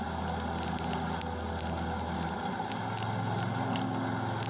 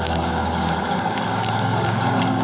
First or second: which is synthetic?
second